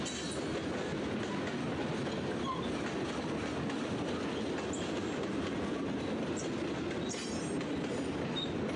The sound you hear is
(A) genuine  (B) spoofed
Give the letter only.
A